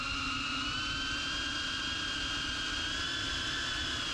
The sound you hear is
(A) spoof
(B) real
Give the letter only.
B